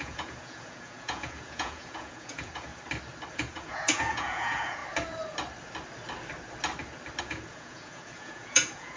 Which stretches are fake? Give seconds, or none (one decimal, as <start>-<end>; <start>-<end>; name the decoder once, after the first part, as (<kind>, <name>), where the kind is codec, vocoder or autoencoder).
0.0-2.7 (vocoder, Vocos); 3.3-4.8; 7.2-9.0